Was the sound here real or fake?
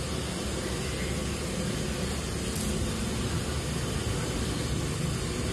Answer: real